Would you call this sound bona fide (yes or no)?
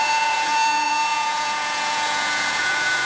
no